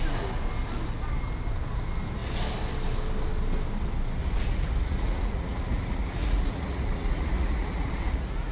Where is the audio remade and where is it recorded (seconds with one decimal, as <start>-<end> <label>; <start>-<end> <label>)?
0.0-4.2 recorded; 4.2-8.5 remade